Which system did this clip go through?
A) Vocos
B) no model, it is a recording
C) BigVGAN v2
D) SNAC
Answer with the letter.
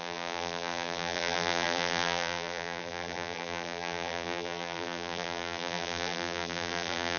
C